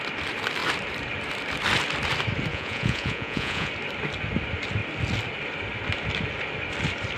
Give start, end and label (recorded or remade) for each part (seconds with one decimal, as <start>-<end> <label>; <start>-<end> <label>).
0.0-2.5 recorded; 2.5-3.7 remade; 3.7-7.2 recorded